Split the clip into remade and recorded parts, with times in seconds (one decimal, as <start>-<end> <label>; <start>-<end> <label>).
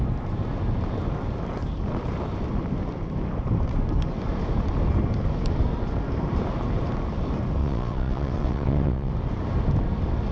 0.0-7.6 recorded; 7.6-9.1 remade; 9.1-10.3 recorded